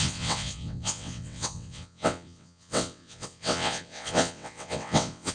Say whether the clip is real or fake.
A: fake